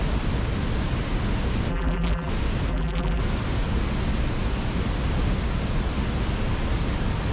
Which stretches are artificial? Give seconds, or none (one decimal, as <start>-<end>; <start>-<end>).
1.7-2.3; 2.7-3.2

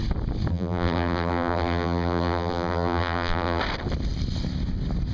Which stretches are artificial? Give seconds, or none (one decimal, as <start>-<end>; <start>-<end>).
0.5-3.6

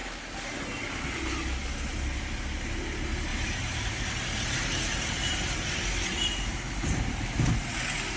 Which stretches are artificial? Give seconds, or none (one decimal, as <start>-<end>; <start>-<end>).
3.3-7.5

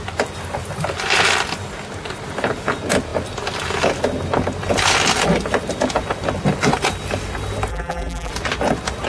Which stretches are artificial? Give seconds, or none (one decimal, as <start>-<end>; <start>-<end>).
7.7-8.3

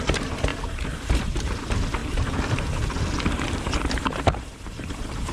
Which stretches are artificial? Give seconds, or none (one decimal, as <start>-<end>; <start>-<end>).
0.0-2.0; 3.5-5.3

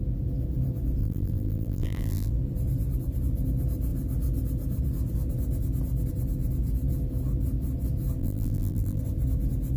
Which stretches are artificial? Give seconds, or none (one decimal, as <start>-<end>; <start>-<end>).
1.0-2.3; 8.2-9.0